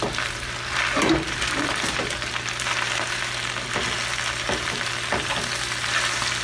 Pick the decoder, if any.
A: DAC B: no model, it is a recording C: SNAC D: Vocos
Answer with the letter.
B